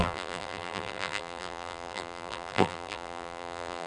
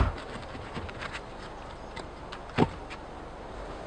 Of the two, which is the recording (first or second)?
second